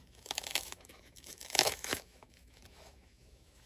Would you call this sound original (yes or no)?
no